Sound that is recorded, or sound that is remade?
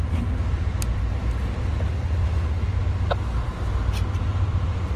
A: recorded